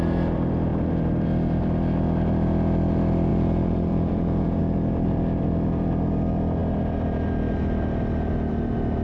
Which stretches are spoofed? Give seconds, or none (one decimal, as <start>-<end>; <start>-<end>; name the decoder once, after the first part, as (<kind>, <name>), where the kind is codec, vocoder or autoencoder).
3.3-4.6 (vocoder, Vocos)